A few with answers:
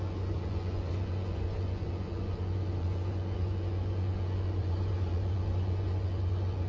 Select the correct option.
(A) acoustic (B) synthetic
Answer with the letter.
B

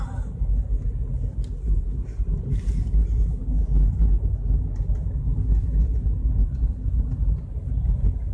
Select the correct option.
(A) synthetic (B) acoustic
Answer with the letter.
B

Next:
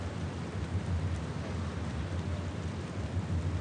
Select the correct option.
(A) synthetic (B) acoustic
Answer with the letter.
B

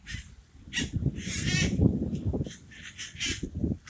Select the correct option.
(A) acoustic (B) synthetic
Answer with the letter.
B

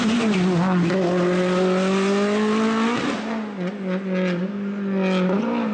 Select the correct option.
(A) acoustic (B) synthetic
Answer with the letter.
A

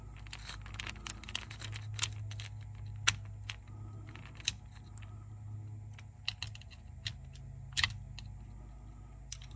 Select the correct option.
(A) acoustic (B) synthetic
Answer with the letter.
A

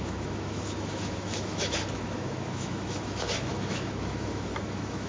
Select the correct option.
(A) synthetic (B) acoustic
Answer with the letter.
A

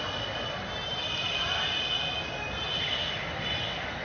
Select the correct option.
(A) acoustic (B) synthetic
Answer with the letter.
A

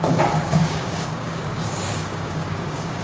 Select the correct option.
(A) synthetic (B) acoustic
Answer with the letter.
A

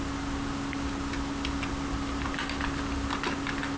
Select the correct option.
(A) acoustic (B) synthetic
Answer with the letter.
A